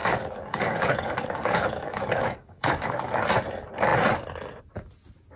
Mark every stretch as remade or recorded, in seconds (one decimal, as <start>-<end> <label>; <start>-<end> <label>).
0.0-3.2 remade; 3.2-5.4 recorded

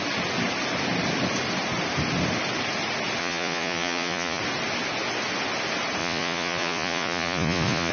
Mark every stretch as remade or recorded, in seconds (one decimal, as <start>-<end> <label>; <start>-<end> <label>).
0.0-3.2 recorded; 3.2-4.4 remade; 4.4-6.0 recorded; 6.0-7.9 remade

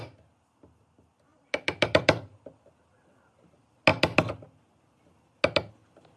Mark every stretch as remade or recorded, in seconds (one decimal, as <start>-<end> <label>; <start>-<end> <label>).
0.0-1.3 recorded; 1.3-2.7 remade; 2.7-6.2 recorded

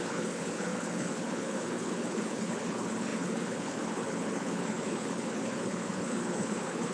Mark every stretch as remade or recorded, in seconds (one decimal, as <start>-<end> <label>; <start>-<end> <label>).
0.0-6.9 remade